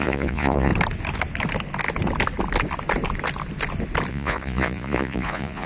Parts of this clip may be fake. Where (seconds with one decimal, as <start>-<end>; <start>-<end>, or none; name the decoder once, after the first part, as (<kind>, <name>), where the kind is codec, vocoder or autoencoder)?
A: 0.0-0.7 (vocoder, Vocos); 4.1-5.7